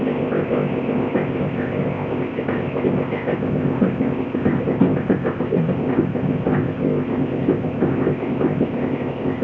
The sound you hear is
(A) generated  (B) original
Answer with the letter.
A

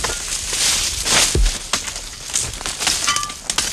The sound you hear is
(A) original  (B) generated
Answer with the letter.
A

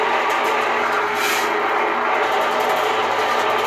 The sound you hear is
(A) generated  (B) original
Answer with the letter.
B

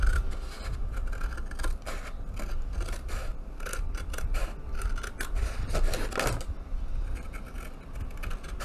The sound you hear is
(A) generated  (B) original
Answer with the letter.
B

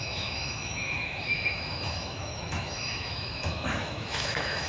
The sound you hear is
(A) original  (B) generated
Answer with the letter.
B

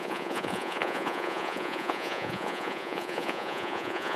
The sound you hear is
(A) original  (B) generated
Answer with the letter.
B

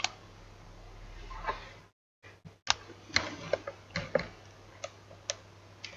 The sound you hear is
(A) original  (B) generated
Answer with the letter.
A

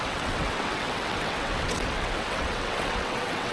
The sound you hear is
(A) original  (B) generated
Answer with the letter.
B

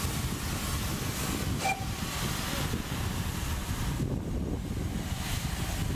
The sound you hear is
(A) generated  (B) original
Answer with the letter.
B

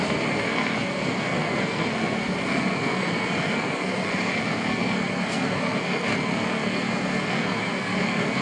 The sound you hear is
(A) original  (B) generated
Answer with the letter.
B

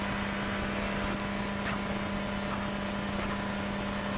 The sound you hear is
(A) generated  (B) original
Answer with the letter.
B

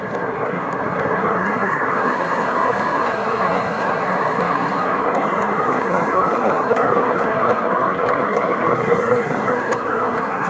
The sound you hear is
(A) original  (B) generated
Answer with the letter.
B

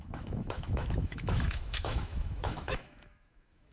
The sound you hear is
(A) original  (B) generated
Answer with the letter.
B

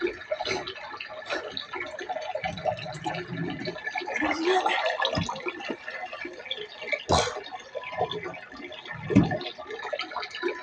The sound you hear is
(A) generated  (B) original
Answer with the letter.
B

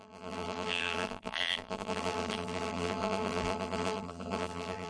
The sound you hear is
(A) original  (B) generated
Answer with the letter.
B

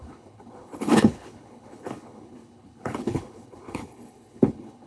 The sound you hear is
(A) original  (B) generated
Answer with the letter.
B